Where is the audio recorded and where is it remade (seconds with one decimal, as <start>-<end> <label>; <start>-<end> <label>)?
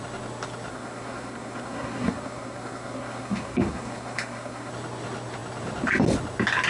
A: 0.0-0.7 recorded; 0.7-4.7 remade; 4.7-6.7 recorded